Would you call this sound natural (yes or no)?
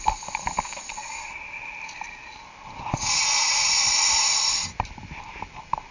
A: yes